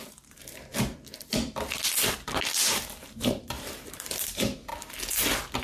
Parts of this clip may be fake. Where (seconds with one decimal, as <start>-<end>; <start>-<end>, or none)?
0.0-0.7; 2.1-4.7